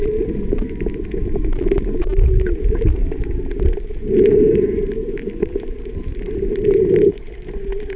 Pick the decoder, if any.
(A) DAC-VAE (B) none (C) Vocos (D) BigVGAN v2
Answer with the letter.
D